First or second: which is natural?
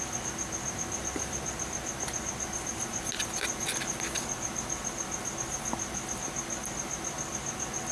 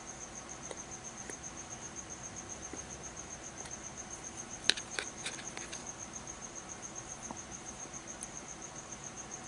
first